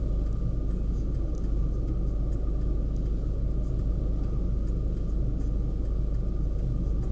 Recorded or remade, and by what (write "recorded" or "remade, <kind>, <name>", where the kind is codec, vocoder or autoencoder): recorded